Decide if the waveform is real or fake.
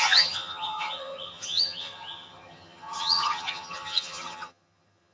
fake